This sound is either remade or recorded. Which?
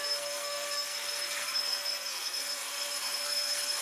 remade